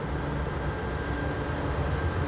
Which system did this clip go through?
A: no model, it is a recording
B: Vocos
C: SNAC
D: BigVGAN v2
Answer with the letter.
A